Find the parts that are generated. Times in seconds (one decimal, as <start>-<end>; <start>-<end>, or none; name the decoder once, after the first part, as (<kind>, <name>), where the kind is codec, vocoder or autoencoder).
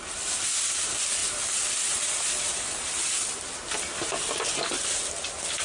none